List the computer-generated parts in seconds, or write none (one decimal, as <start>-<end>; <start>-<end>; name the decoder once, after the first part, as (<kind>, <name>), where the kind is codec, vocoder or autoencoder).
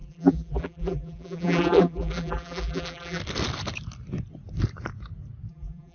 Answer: 0.0-3.2 (vocoder, BigVGAN v2); 5.5-5.9